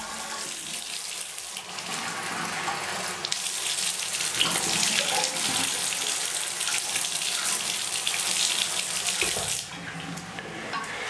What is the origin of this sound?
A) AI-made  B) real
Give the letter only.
B